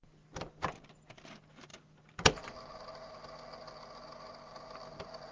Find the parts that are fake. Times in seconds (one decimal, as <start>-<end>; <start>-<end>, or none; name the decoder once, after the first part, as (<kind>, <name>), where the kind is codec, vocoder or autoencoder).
none